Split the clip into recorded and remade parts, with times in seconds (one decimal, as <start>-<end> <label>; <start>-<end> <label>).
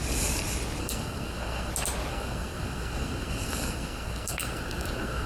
0.0-0.8 recorded; 0.8-1.7 remade; 1.7-2.1 recorded; 2.1-5.3 remade